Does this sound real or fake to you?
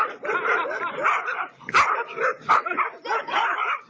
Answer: real